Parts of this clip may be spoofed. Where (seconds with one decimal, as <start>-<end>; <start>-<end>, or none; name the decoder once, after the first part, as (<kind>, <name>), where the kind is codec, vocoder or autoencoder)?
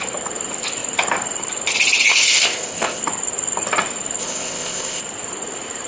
2.1-3.0 (codec, ZipCodec); 4.2-5.0